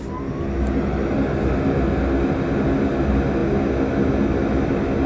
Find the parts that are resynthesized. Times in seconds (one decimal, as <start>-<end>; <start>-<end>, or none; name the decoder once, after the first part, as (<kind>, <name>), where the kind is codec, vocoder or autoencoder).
none